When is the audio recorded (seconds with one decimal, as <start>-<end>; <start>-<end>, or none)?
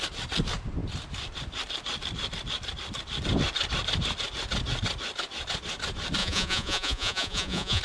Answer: 0.0-6.2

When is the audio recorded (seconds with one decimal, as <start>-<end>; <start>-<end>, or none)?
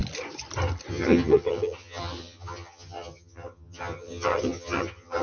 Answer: 0.0-0.9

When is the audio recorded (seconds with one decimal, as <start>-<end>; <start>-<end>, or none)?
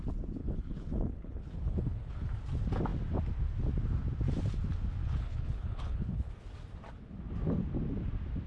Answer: 0.0-0.4; 2.3-5.0; 6.3-8.5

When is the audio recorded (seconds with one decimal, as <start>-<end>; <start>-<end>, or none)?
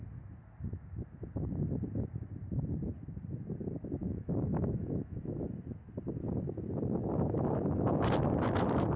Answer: 0.0-4.0; 5.5-9.0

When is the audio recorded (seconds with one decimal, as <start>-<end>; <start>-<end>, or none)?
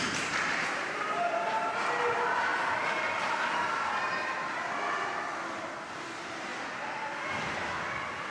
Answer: 2.5-5.9; 6.5-8.3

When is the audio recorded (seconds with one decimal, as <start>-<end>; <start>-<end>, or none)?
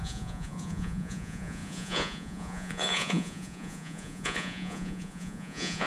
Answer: none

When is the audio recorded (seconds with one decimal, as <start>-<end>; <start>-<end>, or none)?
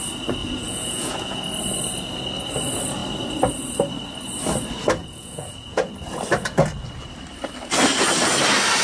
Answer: 0.0-0.4; 1.4-5.0; 5.9-8.8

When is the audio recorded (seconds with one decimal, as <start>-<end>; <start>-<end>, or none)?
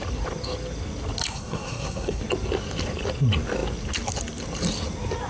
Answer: 0.0-1.3; 2.2-5.3